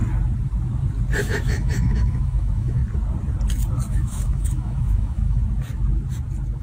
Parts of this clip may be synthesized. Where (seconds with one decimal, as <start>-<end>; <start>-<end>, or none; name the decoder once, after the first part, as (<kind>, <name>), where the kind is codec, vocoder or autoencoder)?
1.2-2.8 (autoencoder, DAC-VAE); 3.9-5.4